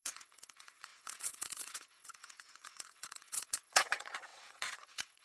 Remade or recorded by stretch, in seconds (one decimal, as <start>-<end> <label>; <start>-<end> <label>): 0.0-5.2 remade